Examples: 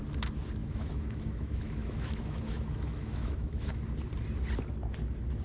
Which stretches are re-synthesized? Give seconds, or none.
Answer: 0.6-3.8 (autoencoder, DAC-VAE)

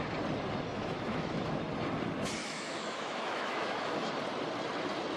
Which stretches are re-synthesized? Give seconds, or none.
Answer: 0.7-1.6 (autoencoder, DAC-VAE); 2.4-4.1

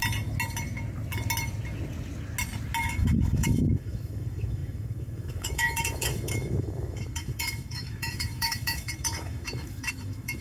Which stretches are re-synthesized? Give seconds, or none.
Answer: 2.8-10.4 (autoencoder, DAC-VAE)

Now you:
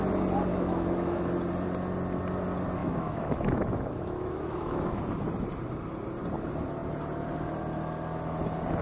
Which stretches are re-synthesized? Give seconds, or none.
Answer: 0.5-1.2 (autoencoder, DAC-VAE); 2.8-5.0

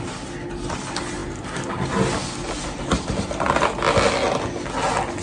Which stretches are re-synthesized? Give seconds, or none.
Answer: none